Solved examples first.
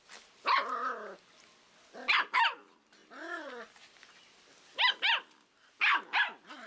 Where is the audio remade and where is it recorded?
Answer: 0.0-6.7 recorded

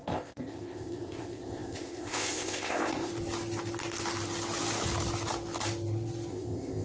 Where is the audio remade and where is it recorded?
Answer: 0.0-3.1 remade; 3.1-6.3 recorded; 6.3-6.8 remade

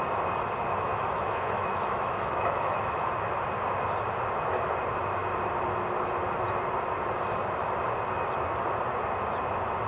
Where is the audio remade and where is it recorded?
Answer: 0.0-0.9 recorded; 0.9-3.1 remade; 3.1-9.9 recorded

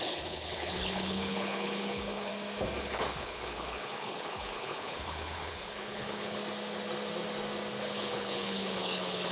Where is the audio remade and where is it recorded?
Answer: 0.0-2.3 remade; 2.3-2.8 recorded; 2.8-6.4 remade; 6.4-7.8 recorded; 7.8-9.3 remade

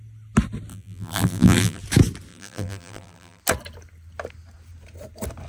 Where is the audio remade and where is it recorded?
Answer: 0.0-0.7 recorded; 0.7-1.8 remade; 1.8-2.3 recorded; 2.3-3.4 remade; 3.4-5.5 recorded

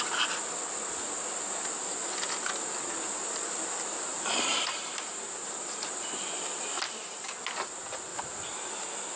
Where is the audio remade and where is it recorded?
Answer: 0.0-4.1 recorded; 4.1-7.4 remade; 7.4-8.1 recorded; 8.1-8.7 remade; 8.7-9.2 recorded

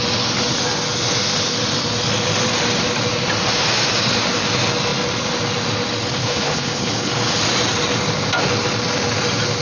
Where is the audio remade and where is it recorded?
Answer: 0.0-6.2 recorded; 6.2-7.1 remade; 7.1-9.6 recorded

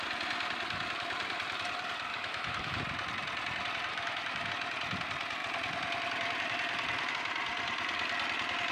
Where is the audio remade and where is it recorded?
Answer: 0.0-2.1 recorded; 2.1-2.8 remade; 2.8-3.9 recorded; 3.9-4.5 remade; 4.5-8.7 recorded